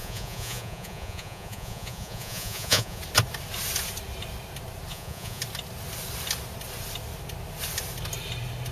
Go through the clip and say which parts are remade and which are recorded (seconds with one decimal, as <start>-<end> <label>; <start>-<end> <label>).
0.0-3.0 remade; 3.0-4.9 recorded; 4.9-5.4 remade; 5.4-8.7 recorded